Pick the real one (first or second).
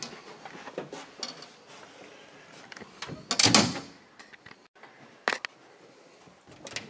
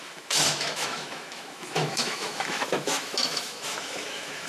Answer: first